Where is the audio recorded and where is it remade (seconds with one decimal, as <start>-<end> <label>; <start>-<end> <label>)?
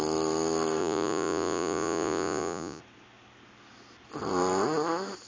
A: 0.0-0.8 recorded; 0.8-2.8 remade; 2.8-5.3 recorded